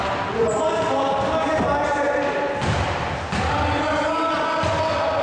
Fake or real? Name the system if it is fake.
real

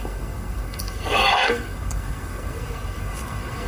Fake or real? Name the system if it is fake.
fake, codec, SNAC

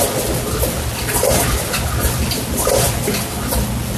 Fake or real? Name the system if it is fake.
real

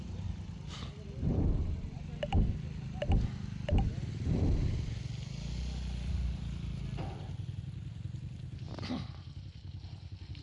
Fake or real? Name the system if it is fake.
real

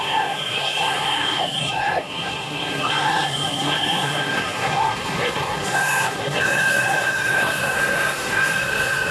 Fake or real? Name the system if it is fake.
fake, codec, SNAC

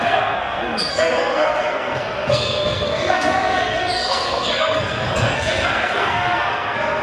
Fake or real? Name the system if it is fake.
fake, codec, SNAC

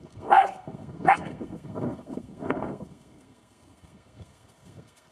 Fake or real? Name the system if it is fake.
fake, codec, SNAC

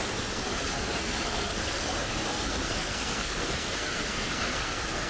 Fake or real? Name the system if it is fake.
fake, codec, SNAC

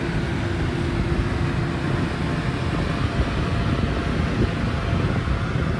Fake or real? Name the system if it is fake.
real